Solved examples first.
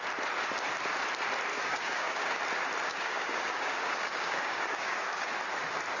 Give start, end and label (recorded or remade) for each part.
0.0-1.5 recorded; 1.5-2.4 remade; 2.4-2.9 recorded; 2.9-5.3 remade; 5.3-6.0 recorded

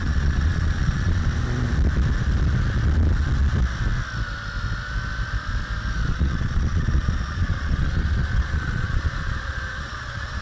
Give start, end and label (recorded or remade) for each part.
0.0-1.3 remade; 1.3-6.1 recorded; 6.1-10.4 remade

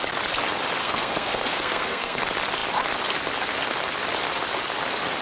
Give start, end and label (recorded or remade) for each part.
0.0-0.8 recorded; 0.8-2.2 remade; 2.2-5.2 recorded

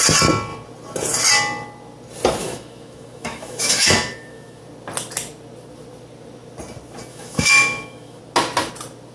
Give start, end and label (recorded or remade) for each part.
0.0-2.4 recorded; 2.4-4.6 remade; 4.6-7.1 recorded; 7.1-8.2 remade; 8.2-9.1 recorded

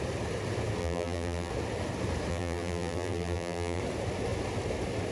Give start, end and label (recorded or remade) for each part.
0.0-0.8 recorded; 0.8-1.5 remade; 1.5-2.3 recorded; 2.3-3.8 remade; 3.8-5.1 recorded

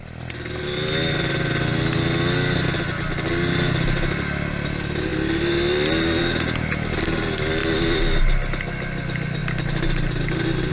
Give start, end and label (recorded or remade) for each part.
0.0-10.7 recorded